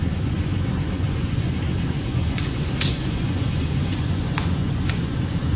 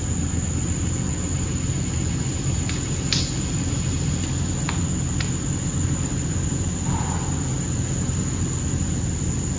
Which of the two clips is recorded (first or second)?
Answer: second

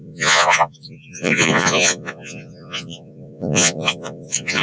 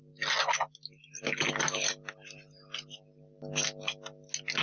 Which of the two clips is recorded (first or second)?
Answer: second